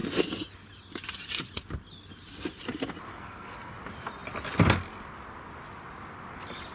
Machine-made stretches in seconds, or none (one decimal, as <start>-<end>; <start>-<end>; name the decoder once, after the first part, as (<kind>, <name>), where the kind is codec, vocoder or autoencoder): 3.1-3.7 (codec, SNAC)